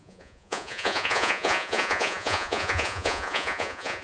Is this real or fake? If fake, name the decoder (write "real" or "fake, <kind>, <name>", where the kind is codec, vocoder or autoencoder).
fake, vocoder, Vocos